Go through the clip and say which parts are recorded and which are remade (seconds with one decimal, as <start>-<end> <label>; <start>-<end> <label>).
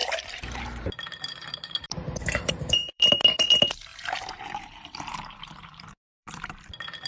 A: 0.0-3.1 remade; 3.1-3.9 recorded; 3.9-6.6 remade; 6.6-7.1 recorded